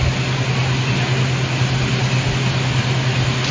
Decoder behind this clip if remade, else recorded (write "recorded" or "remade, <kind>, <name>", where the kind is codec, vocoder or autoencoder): recorded